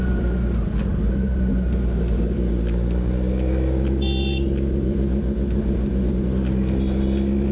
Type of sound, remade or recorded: recorded